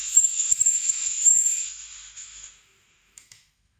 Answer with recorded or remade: remade